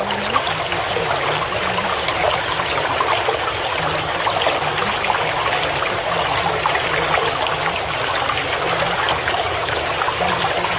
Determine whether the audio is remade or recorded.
recorded